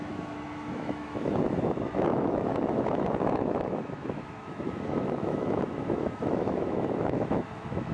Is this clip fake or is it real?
fake